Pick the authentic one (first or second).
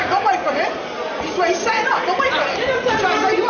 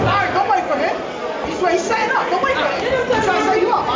second